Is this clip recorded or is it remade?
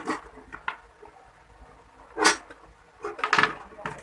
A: recorded